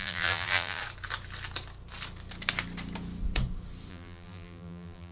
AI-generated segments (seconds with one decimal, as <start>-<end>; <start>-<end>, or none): 0.0-0.8; 3.9-5.1